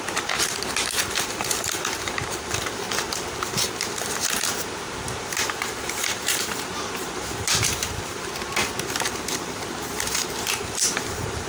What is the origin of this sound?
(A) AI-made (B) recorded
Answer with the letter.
A